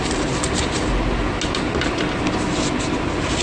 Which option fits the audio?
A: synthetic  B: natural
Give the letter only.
B